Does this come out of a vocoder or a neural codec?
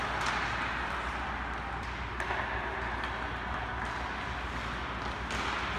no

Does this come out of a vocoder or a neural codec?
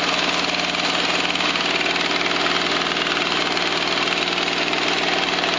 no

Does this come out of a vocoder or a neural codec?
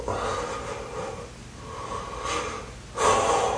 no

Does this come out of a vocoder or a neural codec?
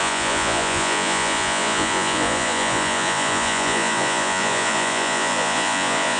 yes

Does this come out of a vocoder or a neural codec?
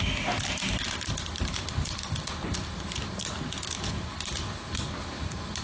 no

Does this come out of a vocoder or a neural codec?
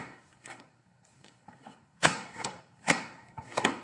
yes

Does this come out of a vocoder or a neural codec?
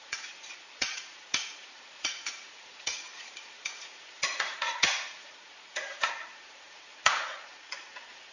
yes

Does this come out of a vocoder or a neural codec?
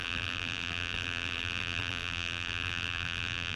yes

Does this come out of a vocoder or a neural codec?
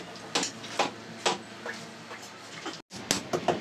no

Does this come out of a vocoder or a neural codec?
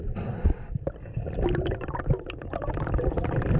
no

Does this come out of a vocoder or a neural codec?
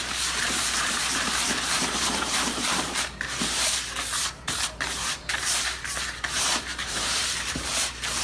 yes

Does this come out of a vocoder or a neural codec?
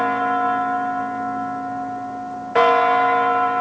no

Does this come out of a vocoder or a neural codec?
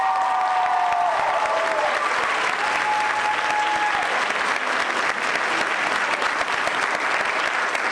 no